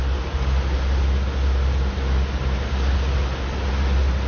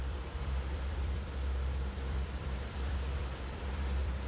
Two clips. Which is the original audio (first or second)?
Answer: first